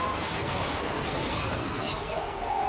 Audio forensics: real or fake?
fake